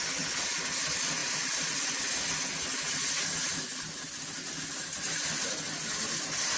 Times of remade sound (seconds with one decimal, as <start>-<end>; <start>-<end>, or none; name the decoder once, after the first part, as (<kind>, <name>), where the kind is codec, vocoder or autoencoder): 1.2-1.8 (vocoder, BigVGAN v2)